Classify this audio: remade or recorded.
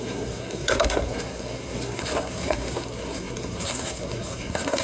remade